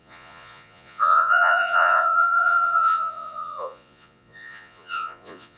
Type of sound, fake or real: fake